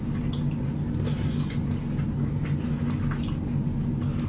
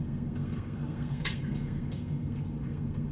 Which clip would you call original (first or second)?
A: first